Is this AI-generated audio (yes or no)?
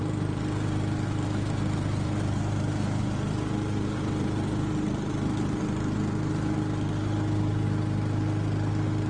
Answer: no